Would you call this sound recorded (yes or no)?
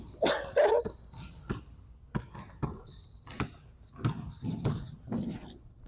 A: yes